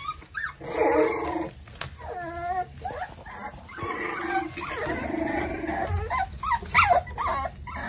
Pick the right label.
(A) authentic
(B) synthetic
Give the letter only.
A